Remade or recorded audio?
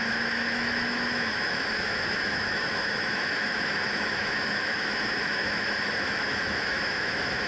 remade